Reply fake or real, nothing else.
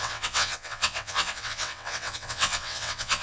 fake